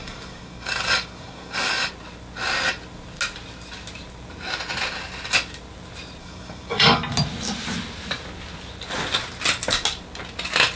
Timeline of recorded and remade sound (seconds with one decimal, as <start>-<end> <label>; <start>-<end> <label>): 0.0-1.9 remade; 1.9-6.2 recorded; 6.2-7.0 remade; 7.0-10.8 recorded